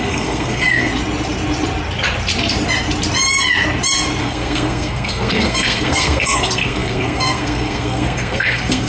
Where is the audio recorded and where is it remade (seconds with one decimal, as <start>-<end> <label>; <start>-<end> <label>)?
0.0-0.9 remade; 0.9-4.2 recorded; 4.2-8.9 remade